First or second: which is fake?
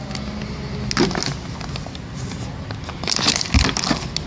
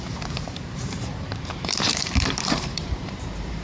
second